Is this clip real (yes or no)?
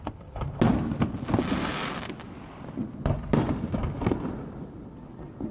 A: yes